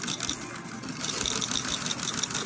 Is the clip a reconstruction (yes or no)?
no